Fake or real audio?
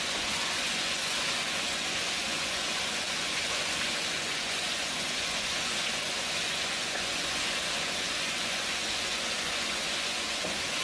fake